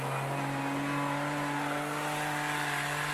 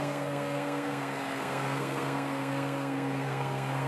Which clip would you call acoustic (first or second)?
first